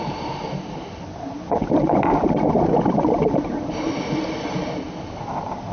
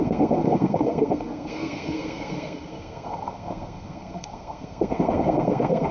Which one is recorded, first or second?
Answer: first